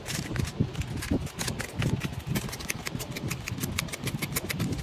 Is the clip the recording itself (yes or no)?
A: yes